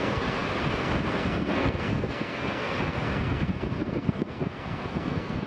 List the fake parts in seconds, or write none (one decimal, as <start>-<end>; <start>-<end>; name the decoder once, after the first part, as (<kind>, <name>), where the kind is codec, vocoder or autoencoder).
0.0-5.5 (codec, SNAC)